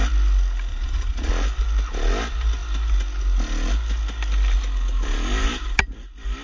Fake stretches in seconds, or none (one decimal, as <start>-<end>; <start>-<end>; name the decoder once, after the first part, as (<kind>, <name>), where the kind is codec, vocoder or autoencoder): 0.7-1.3 (vocoder, Vocos)